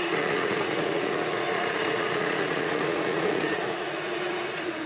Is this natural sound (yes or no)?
no